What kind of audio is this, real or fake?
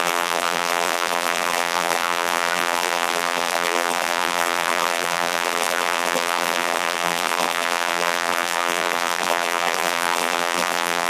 fake